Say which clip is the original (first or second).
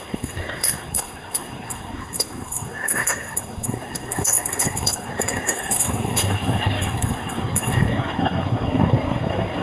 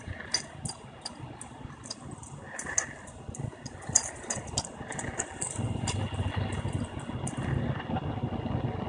second